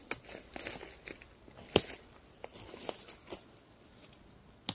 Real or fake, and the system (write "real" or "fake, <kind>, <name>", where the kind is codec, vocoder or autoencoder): real